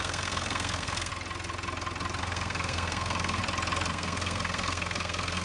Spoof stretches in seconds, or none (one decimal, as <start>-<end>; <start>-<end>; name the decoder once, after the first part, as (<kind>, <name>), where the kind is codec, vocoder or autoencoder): 0.0-1.1 (codec, SNAC); 2.2-3.4; 3.9-5.4